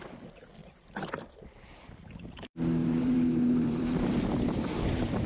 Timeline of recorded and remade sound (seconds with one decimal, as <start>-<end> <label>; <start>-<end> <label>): 0.0-0.6 recorded; 0.6-1.1 remade; 1.1-2.8 recorded; 2.8-4.3 remade; 4.3-5.3 recorded